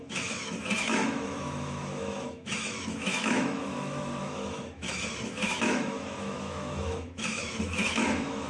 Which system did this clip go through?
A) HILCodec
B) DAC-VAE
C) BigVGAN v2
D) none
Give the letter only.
B